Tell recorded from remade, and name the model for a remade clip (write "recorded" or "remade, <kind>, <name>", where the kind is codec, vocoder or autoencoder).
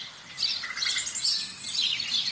recorded